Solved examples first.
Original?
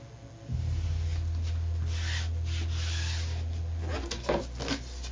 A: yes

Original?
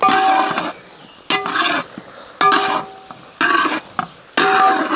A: yes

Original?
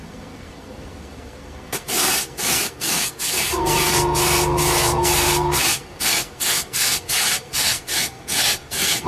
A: no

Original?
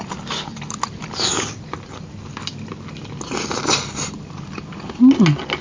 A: yes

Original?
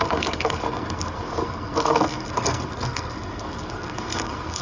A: no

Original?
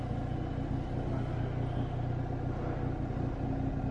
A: yes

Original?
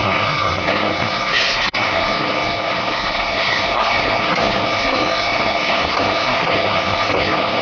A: no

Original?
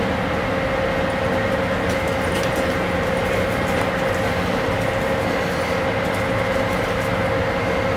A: yes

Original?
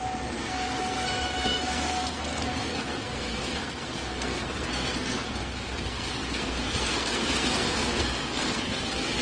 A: no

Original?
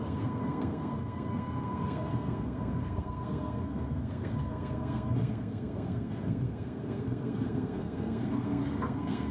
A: no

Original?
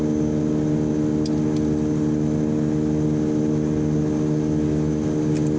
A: yes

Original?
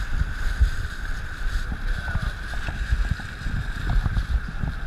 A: yes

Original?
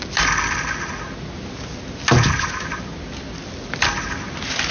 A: yes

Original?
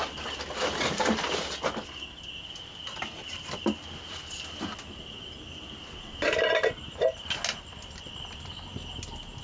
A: yes